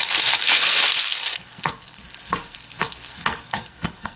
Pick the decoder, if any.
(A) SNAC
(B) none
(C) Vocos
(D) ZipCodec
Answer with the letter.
A